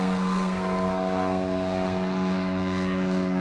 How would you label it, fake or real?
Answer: fake